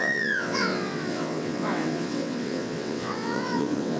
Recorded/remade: remade